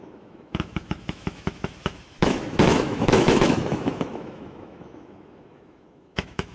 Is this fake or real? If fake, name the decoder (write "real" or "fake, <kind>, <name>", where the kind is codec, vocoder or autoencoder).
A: fake, autoencoder, DAC-VAE